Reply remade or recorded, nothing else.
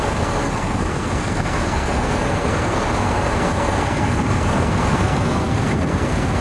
remade